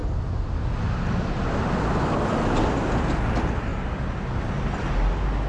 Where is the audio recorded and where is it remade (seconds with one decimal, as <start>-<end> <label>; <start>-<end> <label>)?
0.0-5.5 recorded